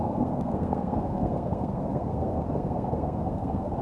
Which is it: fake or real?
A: fake